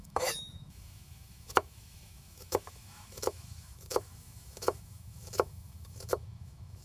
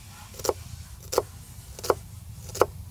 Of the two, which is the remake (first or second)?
first